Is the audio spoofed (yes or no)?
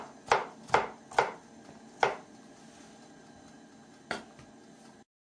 no